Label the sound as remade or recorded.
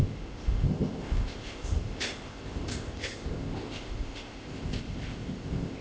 remade